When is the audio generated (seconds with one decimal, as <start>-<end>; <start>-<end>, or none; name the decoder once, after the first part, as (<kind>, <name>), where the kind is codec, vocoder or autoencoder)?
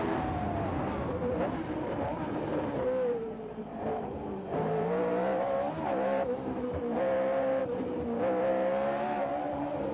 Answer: 0.0-7.6 (vocoder, BigVGAN v2); 8.5-9.9